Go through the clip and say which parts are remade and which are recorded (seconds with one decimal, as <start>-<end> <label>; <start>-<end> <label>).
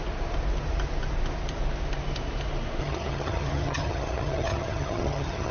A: 0.0-2.8 recorded; 2.8-5.5 remade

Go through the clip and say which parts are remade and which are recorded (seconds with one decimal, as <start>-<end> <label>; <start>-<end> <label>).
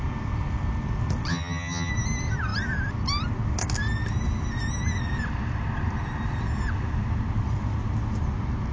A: 0.0-1.3 recorded; 1.3-1.9 remade; 1.9-8.7 recorded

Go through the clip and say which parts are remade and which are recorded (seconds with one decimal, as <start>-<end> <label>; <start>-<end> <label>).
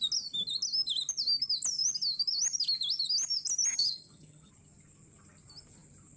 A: 0.0-3.7 recorded; 3.7-4.5 remade; 4.5-6.2 recorded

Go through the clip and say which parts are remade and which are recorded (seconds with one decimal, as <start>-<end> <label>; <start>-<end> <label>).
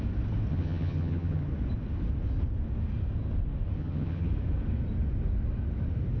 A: 0.0-0.5 recorded; 0.5-1.5 remade; 1.5-3.8 recorded; 3.8-4.3 remade; 4.3-6.2 recorded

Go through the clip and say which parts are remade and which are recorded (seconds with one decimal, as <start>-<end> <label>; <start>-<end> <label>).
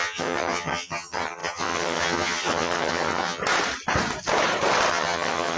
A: 0.0-3.4 remade; 3.4-4.9 recorded; 4.9-5.6 remade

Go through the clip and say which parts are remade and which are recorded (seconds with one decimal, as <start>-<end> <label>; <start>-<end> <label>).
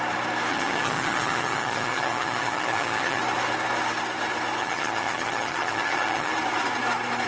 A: 0.0-0.5 recorded; 0.5-3.2 remade; 3.2-4.6 recorded; 4.6-6.3 remade; 6.3-7.3 recorded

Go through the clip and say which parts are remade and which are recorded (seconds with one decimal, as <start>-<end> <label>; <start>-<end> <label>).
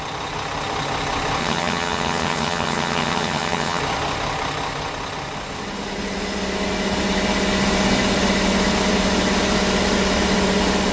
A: 0.0-1.4 recorded; 1.4-3.8 remade; 3.8-10.9 recorded